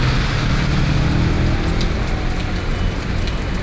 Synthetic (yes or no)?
no